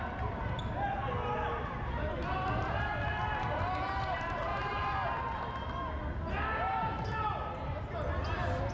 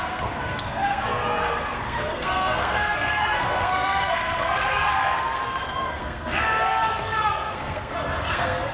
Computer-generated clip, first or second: second